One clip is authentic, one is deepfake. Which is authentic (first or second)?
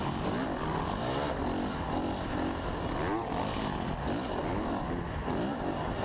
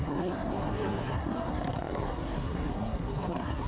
first